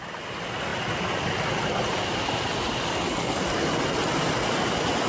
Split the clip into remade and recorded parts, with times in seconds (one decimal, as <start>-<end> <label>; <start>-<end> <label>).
0.0-5.1 recorded